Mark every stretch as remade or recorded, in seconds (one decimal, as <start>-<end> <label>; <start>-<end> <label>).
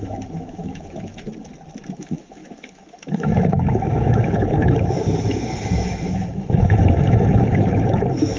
0.0-1.3 remade; 1.3-2.0 recorded; 2.0-8.4 remade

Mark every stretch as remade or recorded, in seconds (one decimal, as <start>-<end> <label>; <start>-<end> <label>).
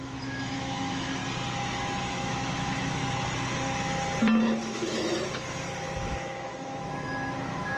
0.0-1.2 remade; 1.2-2.0 recorded; 2.0-3.0 remade; 3.0-4.6 recorded; 4.6-7.8 remade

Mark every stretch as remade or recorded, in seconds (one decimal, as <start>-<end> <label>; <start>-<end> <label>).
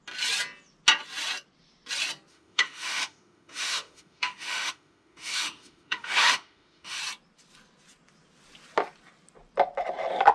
0.0-2.3 recorded; 2.3-7.0 remade; 7.0-10.3 recorded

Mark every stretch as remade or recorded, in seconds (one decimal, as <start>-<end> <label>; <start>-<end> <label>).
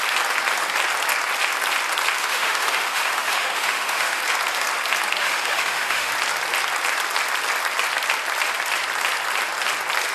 0.0-2.2 recorded; 2.2-4.2 remade; 4.2-5.2 recorded; 5.2-6.1 remade; 6.1-10.1 recorded